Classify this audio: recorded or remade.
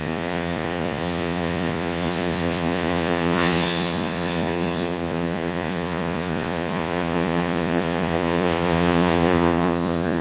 remade